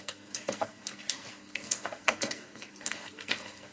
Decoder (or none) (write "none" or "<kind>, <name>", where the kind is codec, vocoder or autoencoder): codec, SNAC